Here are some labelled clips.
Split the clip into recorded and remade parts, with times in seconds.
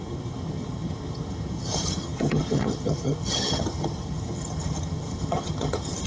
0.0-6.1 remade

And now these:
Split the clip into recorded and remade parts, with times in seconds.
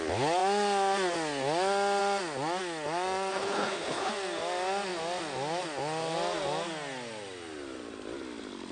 0.0-3.3 recorded; 3.3-4.1 remade; 4.1-8.7 recorded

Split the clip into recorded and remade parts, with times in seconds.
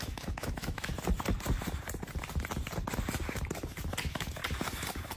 0.0-0.9 remade; 0.9-4.0 recorded; 4.0-4.4 remade; 4.4-5.2 recorded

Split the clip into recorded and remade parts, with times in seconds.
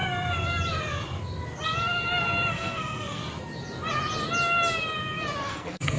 0.0-2.5 recorded; 2.5-3.2 remade; 3.2-5.5 recorded; 5.5-6.0 remade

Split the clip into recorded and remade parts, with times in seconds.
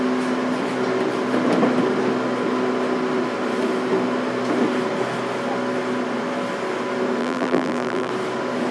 0.0-7.2 recorded; 7.2-8.1 remade; 8.1-8.7 recorded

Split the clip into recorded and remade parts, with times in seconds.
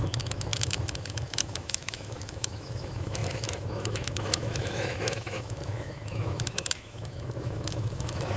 0.0-8.4 remade